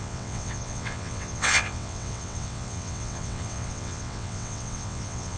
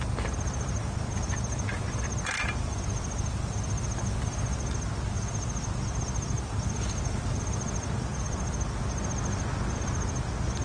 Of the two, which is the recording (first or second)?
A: second